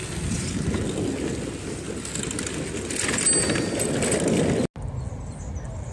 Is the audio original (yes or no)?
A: yes